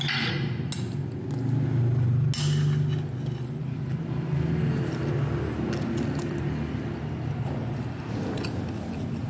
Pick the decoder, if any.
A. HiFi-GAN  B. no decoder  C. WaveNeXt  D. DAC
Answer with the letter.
B